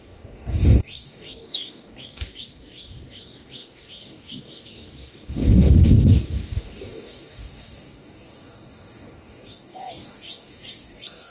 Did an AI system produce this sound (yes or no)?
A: yes